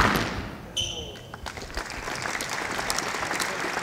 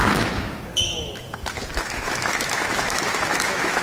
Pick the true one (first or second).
first